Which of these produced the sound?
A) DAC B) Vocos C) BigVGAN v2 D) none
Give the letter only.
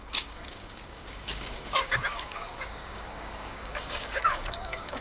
A